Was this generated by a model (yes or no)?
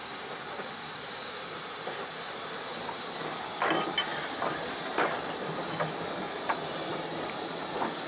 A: no